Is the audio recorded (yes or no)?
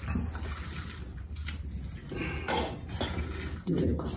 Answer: yes